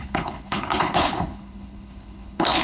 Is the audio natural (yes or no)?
no